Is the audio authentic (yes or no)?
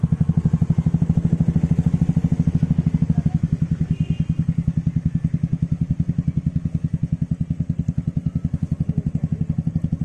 yes